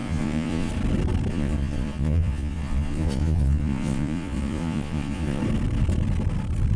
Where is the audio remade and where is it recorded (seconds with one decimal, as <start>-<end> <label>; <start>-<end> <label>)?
0.0-0.7 remade; 0.7-1.3 recorded; 1.3-5.4 remade; 5.4-6.8 recorded